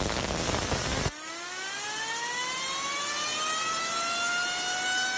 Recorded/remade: recorded